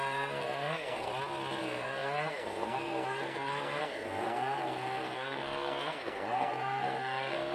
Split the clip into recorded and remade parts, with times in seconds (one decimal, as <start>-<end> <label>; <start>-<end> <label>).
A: 0.0-1.1 remade; 1.1-1.6 recorded; 1.6-7.5 remade